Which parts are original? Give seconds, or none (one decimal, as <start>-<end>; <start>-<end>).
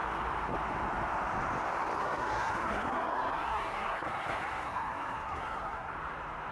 0.0-2.0; 5.9-6.5